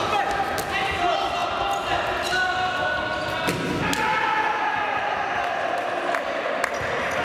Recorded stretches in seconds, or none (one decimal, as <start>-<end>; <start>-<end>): 0.0-7.2